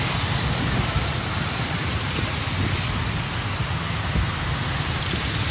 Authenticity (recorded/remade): recorded